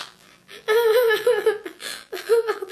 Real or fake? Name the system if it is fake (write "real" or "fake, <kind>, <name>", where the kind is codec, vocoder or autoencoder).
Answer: fake, vocoder, BigVGAN v2